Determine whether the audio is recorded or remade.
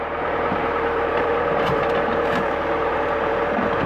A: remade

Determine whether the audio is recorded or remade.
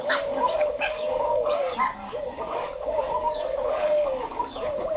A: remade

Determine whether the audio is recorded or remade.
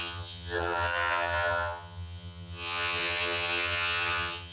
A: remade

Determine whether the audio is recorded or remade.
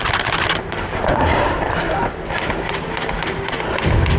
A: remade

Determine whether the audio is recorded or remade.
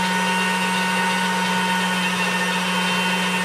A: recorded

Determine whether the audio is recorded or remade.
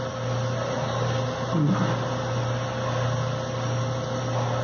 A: recorded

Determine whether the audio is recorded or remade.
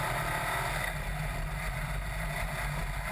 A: recorded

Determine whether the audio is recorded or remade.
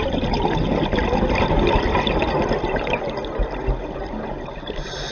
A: recorded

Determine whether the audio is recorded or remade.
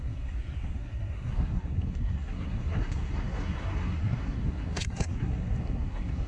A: remade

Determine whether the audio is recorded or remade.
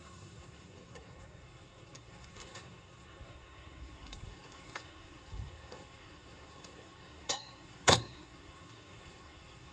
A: remade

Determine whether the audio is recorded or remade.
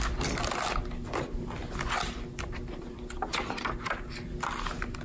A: recorded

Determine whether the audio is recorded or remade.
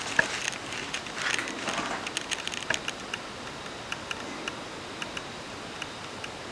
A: recorded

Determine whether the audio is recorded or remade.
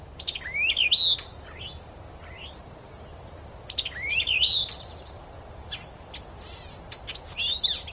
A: recorded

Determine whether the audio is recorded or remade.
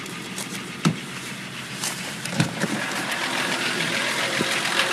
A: remade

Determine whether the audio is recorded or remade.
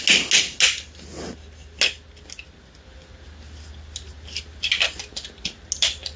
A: recorded